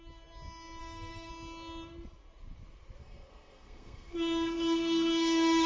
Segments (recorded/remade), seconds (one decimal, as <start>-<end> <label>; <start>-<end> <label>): 0.0-0.8 recorded; 0.8-1.3 remade; 1.3-3.0 recorded; 3.0-5.7 remade